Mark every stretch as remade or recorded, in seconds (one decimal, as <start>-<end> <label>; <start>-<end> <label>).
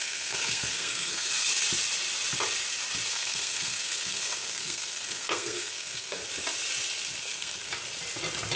0.0-1.5 remade; 1.5-3.1 recorded; 3.1-6.2 remade; 6.2-7.2 recorded; 7.2-7.7 remade; 7.7-8.6 recorded